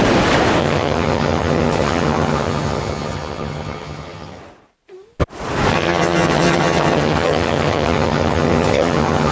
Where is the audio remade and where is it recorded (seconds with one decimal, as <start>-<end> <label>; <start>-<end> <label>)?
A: 0.0-0.6 recorded; 0.6-4.4 remade; 4.4-5.7 recorded; 5.7-9.3 remade